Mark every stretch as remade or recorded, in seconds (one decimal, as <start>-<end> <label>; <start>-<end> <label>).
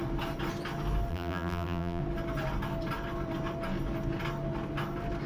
0.0-1.1 recorded; 1.1-2.0 remade; 2.0-5.3 recorded